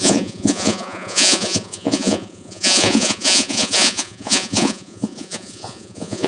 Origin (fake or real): fake